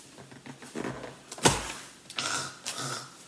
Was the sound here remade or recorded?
recorded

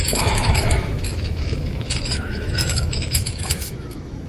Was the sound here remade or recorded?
remade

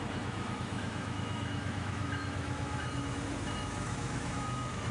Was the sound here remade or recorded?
remade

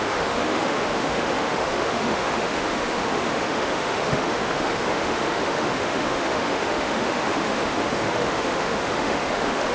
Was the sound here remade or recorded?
remade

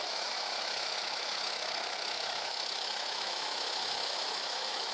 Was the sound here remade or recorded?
remade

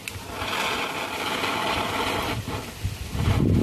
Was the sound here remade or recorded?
recorded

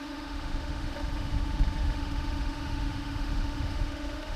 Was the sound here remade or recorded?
remade